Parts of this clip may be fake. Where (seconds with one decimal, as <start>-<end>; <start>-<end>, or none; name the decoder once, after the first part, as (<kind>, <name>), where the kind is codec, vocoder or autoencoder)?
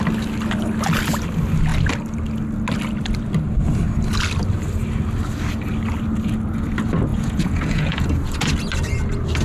7.1-8.1 (vocoder, Vocos)